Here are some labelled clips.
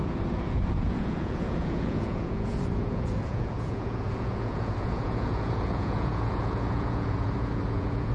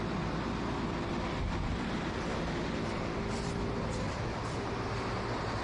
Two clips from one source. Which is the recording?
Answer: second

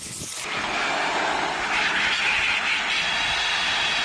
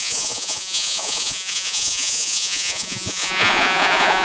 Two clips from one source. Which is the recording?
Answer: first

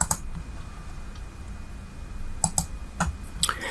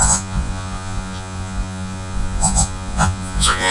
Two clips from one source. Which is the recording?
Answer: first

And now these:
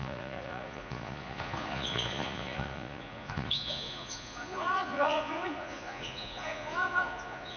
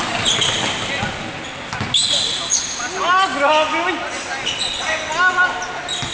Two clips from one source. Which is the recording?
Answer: second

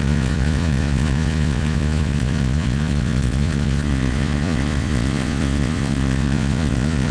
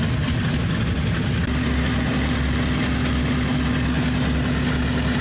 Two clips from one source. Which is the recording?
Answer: second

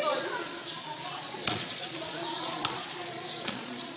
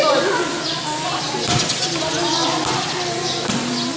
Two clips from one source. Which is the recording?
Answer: second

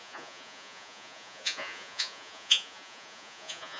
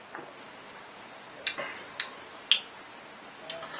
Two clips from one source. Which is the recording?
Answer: second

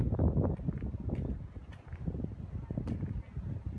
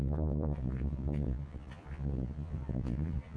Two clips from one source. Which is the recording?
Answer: first